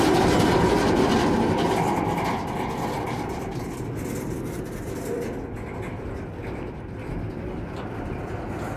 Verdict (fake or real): real